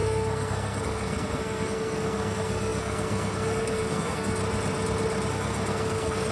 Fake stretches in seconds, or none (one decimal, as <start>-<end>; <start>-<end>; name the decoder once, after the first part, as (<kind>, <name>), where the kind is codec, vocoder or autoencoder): 0.0-4.4 (codec, SNAC); 5.3-6.3